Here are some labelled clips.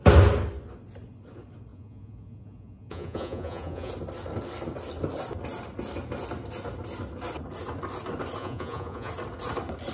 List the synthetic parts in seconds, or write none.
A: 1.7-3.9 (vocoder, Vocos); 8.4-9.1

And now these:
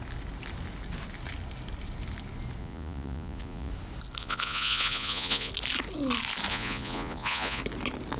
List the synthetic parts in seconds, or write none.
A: 2.6-3.7 (vocoder, Vocos); 4.2-5.5; 6.5-7.6

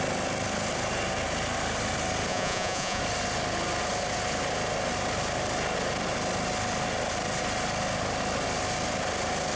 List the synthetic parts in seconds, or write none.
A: 2.3-3.0 (vocoder, Vocos)

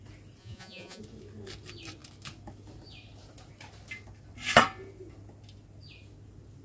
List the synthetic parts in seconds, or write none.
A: 0.4-1.0 (vocoder, Vocos)